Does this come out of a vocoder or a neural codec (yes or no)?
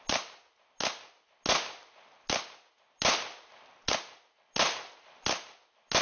no